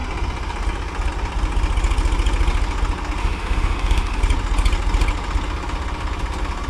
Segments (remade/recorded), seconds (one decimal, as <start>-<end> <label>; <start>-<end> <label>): 0.0-3.2 recorded; 3.2-4.2 remade; 4.2-6.7 recorded